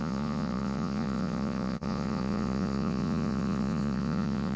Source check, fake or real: fake